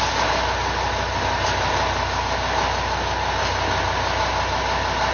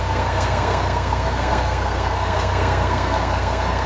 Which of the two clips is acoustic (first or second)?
first